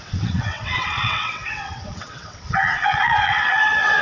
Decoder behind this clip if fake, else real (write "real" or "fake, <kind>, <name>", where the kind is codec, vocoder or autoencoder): fake, vocoder, WaveNeXt